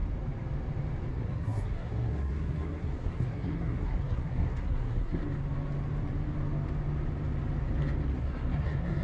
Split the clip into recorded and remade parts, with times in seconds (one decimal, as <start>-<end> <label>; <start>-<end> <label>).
0.0-1.1 recorded; 1.1-5.2 remade; 5.2-8.1 recorded; 8.1-9.0 remade